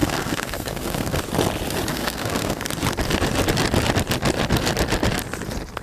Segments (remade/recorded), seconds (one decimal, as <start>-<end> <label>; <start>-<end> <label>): 0.0-1.2 remade; 1.2-1.9 recorded; 1.9-2.6 remade; 2.6-5.8 recorded